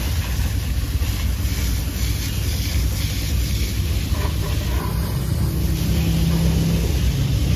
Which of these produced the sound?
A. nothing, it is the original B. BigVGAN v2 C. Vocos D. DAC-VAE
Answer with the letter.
A